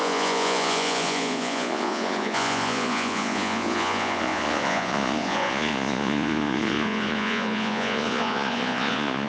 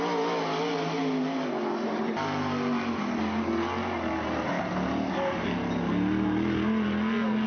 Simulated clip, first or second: first